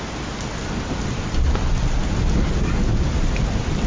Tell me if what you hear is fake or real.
real